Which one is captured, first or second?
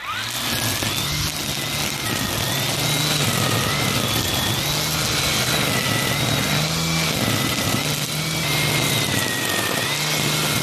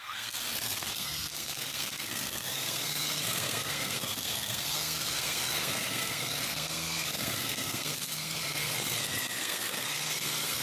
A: first